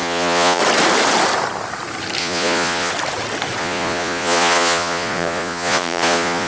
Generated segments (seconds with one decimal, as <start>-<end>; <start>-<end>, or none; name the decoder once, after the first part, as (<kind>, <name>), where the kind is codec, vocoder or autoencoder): 0.0-0.6 (vocoder, Vocos); 2.2-2.9; 3.6-6.5